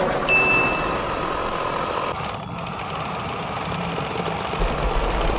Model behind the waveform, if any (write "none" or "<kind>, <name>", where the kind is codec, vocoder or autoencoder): none